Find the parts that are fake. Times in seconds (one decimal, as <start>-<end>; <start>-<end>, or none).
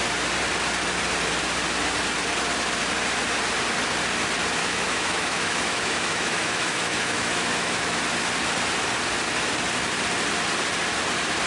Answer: 4.6-8.0